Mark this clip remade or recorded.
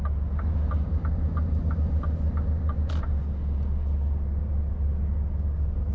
recorded